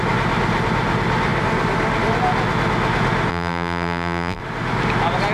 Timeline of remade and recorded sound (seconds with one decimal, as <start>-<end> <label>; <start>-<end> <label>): 0.0-3.3 recorded; 3.3-4.4 remade; 4.4-5.3 recorded